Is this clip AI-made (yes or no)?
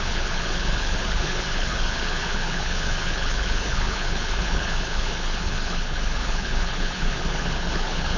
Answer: yes